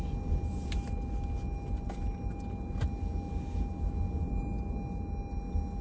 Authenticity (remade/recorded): recorded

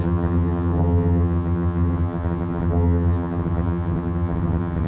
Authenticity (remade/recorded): remade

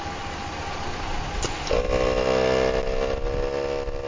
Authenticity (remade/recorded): recorded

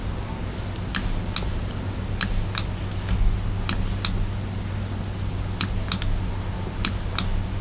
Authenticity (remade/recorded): recorded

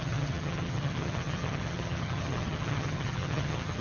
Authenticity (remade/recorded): remade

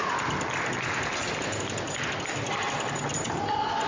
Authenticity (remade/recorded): recorded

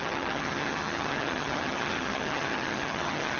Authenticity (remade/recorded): remade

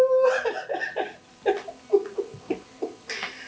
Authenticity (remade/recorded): recorded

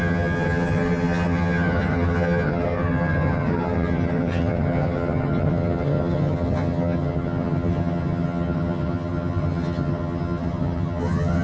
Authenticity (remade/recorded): remade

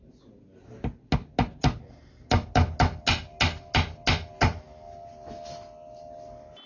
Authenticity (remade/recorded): recorded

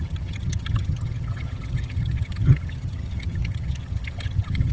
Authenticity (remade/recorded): remade